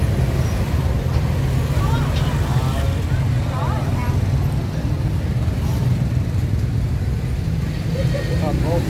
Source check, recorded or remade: recorded